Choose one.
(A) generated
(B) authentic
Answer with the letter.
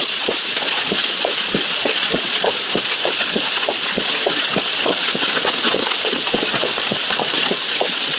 A